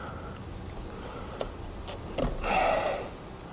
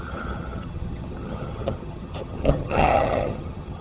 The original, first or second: first